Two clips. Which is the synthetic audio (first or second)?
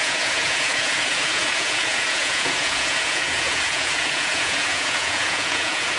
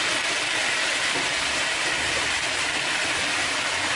first